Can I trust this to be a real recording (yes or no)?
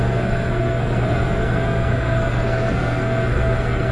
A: no